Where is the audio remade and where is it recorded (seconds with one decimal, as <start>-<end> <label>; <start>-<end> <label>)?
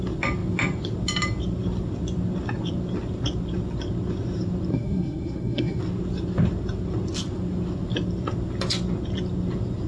0.0-4.7 recorded; 4.7-5.8 remade; 5.8-9.9 recorded